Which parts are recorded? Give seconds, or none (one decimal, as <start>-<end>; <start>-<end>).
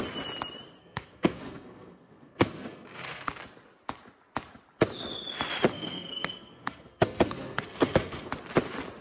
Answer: 0.0-0.8; 3.3-5.7; 8.3-9.0